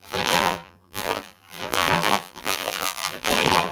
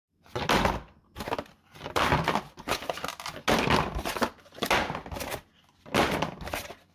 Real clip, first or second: second